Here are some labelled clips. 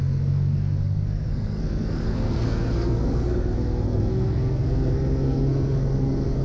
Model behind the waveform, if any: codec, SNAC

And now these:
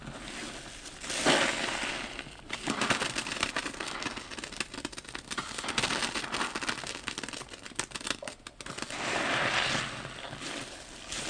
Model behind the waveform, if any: none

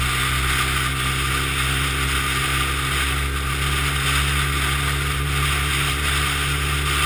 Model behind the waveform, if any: none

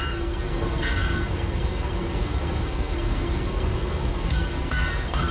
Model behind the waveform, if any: codec, SNAC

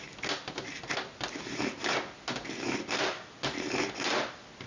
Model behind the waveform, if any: none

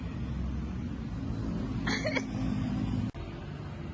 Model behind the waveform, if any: none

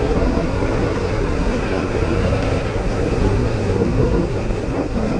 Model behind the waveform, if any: codec, SNAC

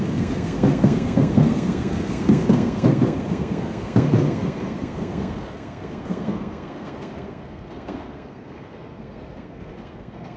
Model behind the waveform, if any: codec, SNAC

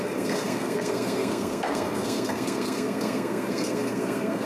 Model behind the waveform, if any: codec, SNAC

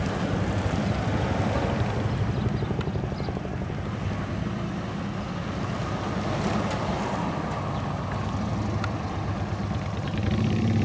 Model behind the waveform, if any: none